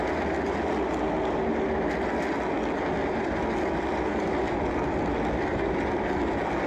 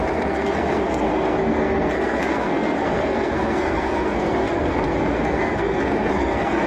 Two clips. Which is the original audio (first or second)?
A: first